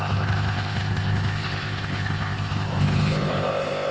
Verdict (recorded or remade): remade